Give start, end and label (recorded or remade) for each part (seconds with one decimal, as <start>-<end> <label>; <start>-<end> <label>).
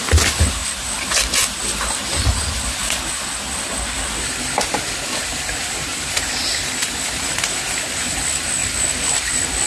0.0-9.7 recorded